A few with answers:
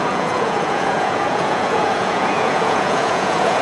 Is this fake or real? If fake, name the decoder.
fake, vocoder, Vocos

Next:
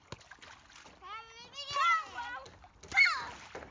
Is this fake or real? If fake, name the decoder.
real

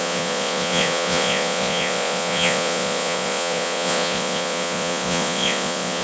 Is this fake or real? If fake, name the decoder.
fake, vocoder, Vocos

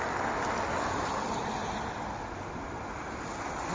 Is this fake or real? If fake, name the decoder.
real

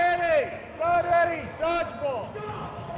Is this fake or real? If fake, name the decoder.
real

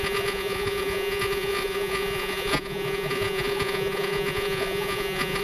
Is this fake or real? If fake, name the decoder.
fake, vocoder, Vocos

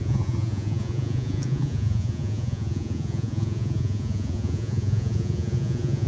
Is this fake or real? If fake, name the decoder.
fake, vocoder, Vocos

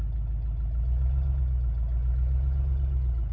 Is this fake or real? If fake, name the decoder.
real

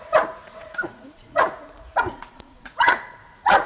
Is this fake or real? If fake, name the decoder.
fake, vocoder, Vocos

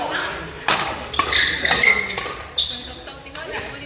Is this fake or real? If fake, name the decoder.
real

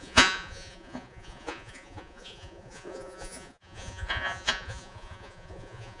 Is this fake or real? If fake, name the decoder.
fake, vocoder, Vocos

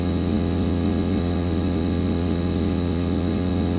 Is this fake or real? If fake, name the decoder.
fake, vocoder, Vocos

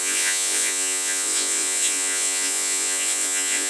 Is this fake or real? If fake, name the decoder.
fake, vocoder, Vocos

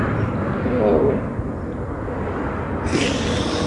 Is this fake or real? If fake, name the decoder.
real